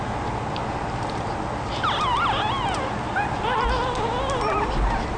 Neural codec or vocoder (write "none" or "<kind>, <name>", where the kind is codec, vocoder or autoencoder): none